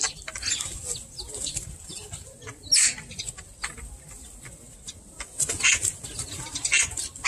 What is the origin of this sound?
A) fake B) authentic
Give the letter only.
B